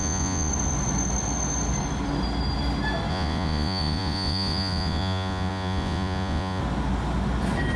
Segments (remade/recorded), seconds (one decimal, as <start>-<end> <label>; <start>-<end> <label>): 0.0-0.5 remade; 0.5-3.1 recorded; 3.1-6.6 remade; 6.6-7.8 recorded